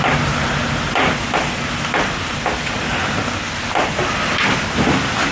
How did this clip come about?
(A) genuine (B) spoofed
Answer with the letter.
A